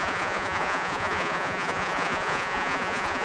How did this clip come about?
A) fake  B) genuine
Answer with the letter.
A